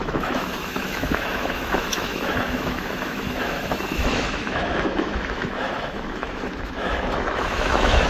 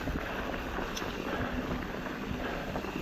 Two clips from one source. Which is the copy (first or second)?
first